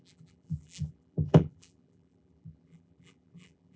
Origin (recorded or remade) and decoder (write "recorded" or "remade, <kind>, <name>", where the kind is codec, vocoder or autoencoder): remade, vocoder, BigVGAN v2